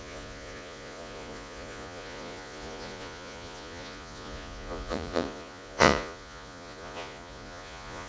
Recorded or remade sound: remade